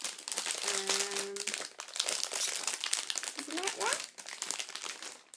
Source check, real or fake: real